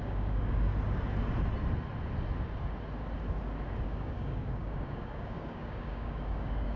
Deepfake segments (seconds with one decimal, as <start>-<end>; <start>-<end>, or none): 0.0-0.7; 3.8-6.8